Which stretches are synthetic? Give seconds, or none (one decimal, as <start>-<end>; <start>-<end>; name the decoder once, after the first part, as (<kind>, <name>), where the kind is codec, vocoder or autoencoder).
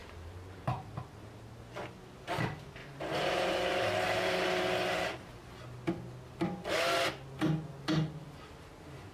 0.0-0.9 (vocoder, BigVGAN v2); 2.8-5.4